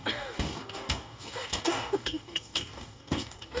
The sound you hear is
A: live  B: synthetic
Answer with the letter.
B